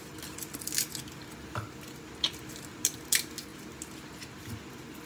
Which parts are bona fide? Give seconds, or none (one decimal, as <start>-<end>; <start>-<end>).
0.0-5.1